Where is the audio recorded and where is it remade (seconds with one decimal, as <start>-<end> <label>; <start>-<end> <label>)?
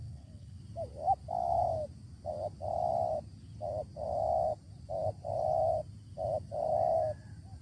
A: 0.0-0.6 remade; 0.6-7.6 recorded